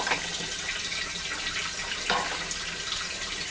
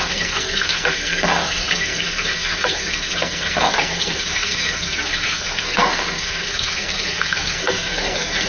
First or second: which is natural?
first